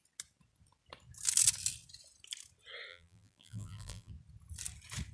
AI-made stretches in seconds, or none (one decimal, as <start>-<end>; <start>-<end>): 2.9-4.1